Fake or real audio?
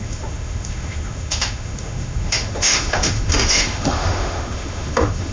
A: fake